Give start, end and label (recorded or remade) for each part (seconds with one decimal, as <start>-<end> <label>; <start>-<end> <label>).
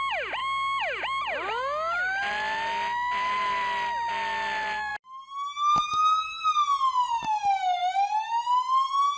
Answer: 0.0-9.2 recorded